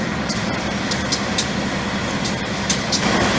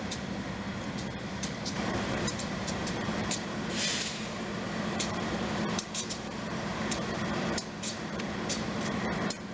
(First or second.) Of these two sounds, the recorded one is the first